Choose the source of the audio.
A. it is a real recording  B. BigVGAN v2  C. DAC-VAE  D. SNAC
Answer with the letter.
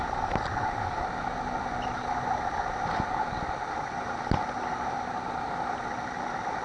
A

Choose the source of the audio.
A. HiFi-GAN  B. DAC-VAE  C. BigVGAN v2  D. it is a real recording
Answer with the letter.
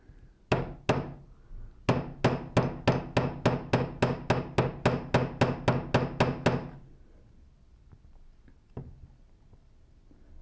D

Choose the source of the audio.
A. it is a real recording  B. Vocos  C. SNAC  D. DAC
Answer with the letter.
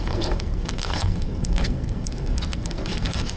C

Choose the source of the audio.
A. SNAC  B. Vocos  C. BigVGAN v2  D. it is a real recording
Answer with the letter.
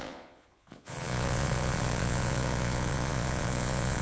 B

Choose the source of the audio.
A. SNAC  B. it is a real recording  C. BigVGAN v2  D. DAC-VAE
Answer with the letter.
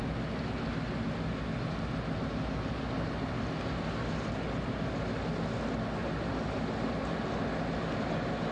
B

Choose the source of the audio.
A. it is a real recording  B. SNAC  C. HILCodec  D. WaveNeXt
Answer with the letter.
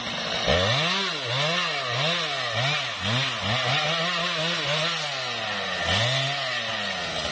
A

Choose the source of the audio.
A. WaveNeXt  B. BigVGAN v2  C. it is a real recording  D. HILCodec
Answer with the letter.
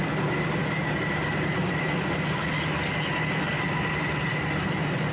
C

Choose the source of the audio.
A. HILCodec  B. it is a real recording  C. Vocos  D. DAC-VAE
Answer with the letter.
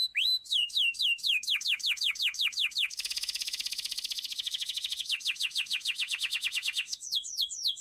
D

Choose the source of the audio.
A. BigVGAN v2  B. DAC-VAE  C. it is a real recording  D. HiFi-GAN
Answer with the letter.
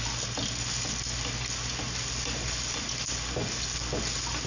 C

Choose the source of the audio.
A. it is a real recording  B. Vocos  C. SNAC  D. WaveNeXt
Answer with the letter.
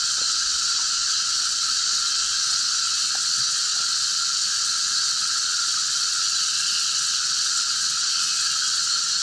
D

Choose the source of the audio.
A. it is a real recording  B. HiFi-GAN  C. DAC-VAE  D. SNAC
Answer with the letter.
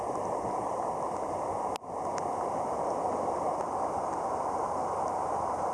A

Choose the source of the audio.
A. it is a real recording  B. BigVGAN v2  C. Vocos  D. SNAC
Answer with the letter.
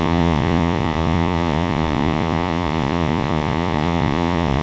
C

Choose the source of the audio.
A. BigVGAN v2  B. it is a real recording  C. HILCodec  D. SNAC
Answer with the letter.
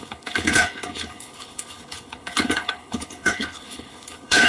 C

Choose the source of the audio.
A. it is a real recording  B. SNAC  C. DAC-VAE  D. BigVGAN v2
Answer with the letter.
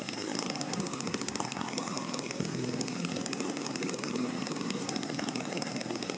B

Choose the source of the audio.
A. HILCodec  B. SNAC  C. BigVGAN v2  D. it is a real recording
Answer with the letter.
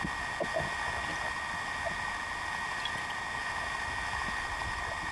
D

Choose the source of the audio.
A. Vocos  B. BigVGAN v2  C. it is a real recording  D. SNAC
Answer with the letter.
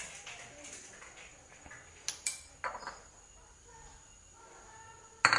C